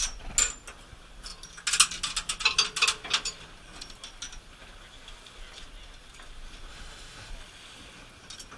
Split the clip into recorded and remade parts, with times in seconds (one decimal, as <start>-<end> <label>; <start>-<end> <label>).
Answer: 0.0-6.7 recorded; 6.7-7.3 remade; 7.3-8.6 recorded